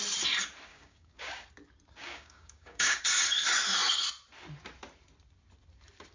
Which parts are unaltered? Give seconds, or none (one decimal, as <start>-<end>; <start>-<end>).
0.0-0.7; 1.5-2.0; 3.0-6.1